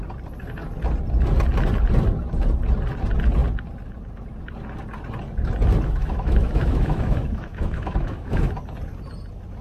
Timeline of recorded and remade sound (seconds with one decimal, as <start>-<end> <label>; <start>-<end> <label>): 0.0-6.0 recorded; 6.0-8.5 remade; 8.5-9.6 recorded